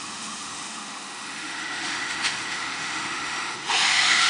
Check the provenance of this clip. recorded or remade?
remade